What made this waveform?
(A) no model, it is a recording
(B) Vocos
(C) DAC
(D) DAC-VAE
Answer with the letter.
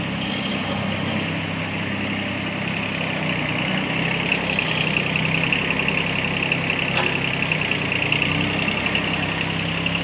A